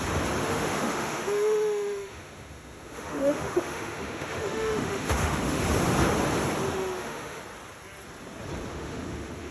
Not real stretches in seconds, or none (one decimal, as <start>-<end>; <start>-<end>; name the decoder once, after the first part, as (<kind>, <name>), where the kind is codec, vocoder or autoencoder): 0.4-5.6 (autoencoder, DAC-VAE); 6.7-7.4; 8.7-9.5